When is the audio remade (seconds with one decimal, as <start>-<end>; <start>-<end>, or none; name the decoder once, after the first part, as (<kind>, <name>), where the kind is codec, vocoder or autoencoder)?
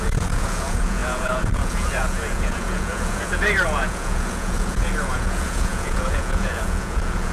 0.0-7.3 (vocoder, Vocos)